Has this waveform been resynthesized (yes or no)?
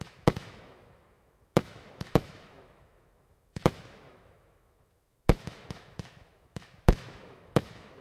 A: yes